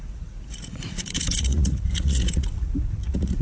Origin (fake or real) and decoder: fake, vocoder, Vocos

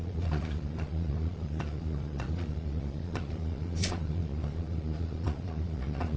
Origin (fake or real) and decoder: fake, vocoder, Vocos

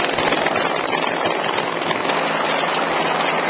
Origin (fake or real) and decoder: real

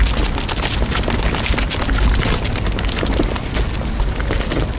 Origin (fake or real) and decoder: real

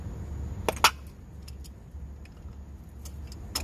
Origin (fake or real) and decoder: real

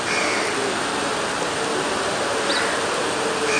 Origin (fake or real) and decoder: real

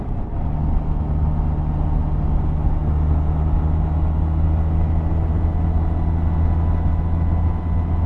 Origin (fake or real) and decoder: real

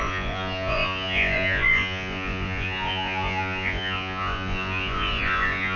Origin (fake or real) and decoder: fake, vocoder, Vocos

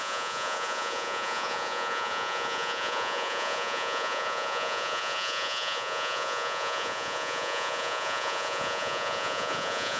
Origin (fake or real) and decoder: fake, vocoder, Vocos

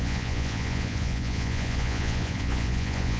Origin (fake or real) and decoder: fake, vocoder, Vocos